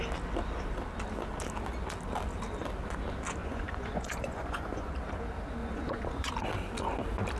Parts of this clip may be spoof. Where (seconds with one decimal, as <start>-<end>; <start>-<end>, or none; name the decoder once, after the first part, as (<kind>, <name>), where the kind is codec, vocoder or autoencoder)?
3.4-4.9 (vocoder, Vocos); 5.6-6.3